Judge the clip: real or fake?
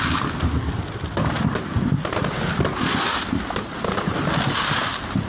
real